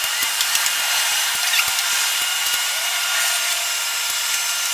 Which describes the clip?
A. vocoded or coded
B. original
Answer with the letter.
B